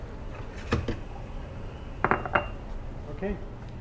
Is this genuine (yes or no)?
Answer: yes